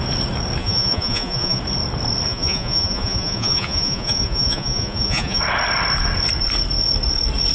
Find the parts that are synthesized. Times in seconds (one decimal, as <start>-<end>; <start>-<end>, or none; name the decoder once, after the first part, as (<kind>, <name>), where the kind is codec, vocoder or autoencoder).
0.6-1.6 (vocoder, Vocos); 2.3-5.4